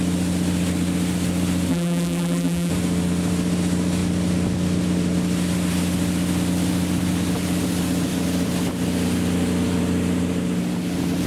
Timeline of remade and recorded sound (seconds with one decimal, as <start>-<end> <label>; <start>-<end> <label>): 0.0-1.7 recorded; 1.7-2.7 remade; 2.7-11.3 recorded